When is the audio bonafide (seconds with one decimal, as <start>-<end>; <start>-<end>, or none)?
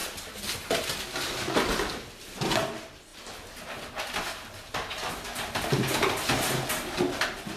0.0-7.6